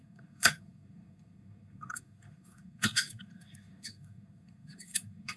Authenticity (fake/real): fake